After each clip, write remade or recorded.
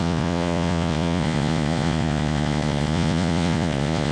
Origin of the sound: remade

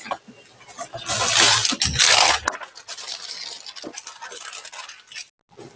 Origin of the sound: recorded